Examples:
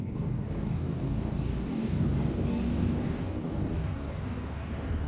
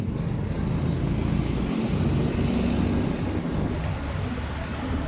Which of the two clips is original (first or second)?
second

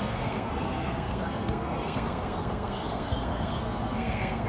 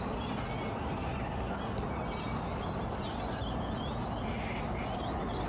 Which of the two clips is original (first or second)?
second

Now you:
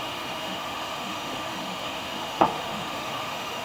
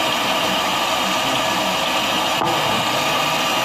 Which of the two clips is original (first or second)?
second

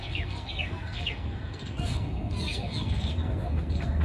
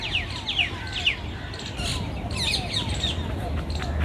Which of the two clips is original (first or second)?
second